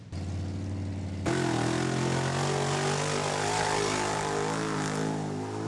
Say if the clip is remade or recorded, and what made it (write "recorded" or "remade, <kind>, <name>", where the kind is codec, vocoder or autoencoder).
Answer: recorded